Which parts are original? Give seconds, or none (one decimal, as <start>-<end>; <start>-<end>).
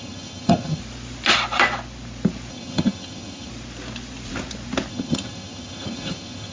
0.8-2.5; 3.5-4.9